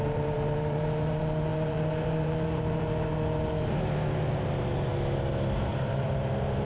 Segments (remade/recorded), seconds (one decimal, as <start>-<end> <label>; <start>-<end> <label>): 0.0-4.9 remade; 4.9-5.7 recorded; 5.7-6.6 remade